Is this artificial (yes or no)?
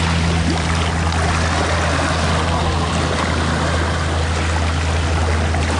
no